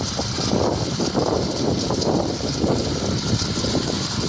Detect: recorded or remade recorded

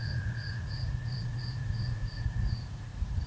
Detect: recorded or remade remade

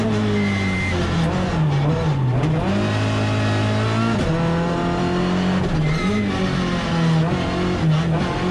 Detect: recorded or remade recorded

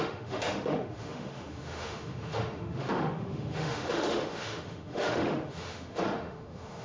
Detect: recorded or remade remade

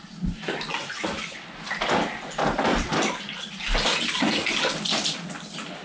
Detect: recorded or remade recorded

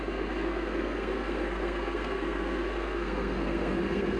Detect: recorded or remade remade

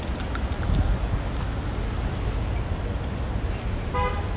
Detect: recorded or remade recorded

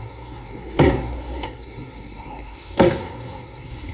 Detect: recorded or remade remade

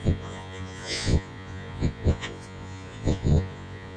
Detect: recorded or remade remade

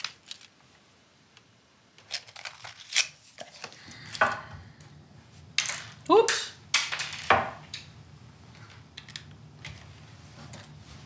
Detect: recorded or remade recorded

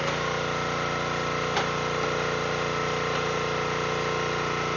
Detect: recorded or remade recorded